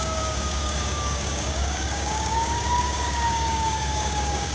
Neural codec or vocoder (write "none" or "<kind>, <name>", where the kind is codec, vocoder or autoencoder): codec, DAC